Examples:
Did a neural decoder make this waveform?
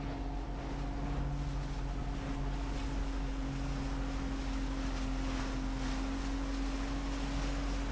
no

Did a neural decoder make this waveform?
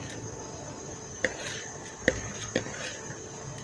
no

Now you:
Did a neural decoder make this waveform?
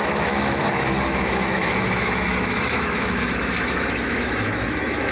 yes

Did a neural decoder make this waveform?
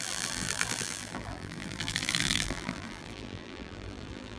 yes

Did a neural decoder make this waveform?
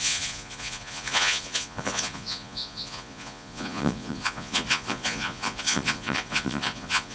yes